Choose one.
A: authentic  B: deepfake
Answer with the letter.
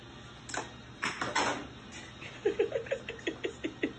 A